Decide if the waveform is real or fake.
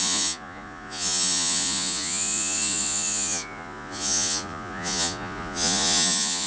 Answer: fake